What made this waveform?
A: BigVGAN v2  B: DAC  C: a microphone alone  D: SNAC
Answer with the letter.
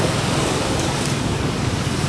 B